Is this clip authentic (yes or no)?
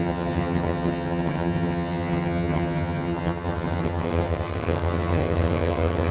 no